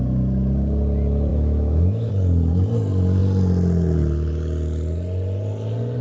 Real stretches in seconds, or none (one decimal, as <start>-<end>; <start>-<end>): 0.0-1.3; 2.1-6.0